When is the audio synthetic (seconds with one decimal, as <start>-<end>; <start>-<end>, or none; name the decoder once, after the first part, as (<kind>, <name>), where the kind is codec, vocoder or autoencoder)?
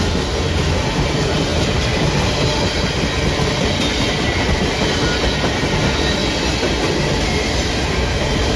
none